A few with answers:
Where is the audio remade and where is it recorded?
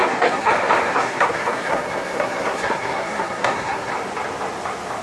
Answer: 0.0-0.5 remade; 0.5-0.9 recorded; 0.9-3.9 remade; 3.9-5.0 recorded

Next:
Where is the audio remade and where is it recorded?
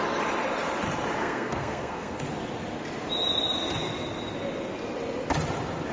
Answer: 0.0-1.2 recorded; 1.2-2.2 remade; 2.2-5.9 recorded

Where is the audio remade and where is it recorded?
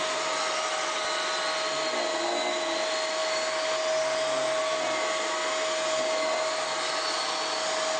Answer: 0.0-8.0 recorded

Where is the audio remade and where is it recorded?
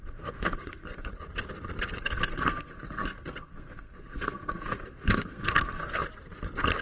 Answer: 0.0-1.1 remade; 1.1-2.0 recorded; 2.0-6.0 remade; 6.0-6.8 recorded